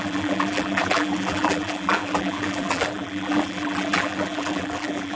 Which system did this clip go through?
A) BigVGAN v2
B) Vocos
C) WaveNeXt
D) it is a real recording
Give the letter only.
A